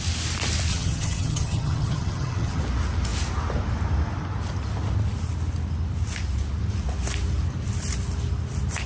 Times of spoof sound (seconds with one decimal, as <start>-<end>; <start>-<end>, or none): 0.7-2.6